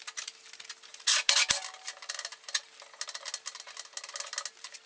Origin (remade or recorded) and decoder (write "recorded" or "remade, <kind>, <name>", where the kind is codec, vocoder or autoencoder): recorded